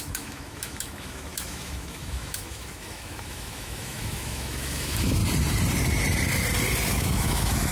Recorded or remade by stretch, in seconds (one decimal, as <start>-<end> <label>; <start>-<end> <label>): 0.0-5.2 remade; 5.2-6.9 recorded; 6.9-7.7 remade